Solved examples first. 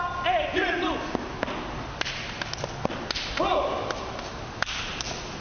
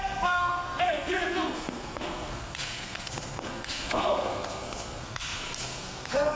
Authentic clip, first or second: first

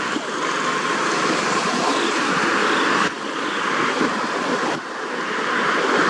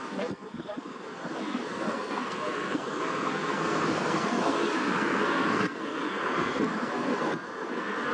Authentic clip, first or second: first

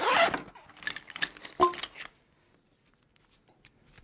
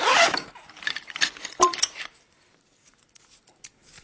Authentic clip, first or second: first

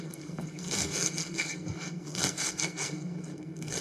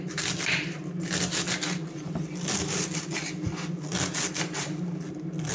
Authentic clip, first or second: second